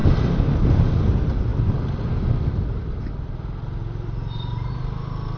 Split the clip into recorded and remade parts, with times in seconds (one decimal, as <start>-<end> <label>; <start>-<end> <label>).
0.0-5.4 recorded